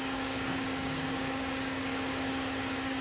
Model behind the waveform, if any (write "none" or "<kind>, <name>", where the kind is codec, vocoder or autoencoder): codec, DAC